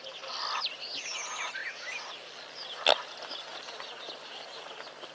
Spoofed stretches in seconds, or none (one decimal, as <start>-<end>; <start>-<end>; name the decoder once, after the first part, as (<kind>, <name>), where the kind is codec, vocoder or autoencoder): 0.0-1.6 (vocoder, BigVGAN v2); 3.1-5.1